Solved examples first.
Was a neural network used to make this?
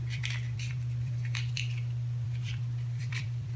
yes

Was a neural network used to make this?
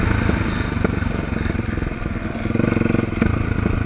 no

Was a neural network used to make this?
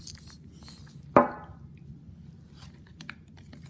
no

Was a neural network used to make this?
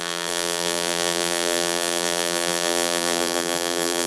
yes